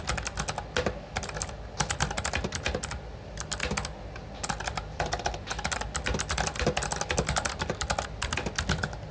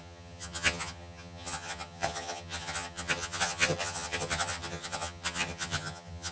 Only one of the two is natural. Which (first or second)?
first